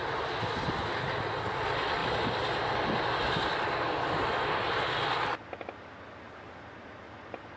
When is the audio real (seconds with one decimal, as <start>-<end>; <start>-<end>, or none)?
0.0-7.6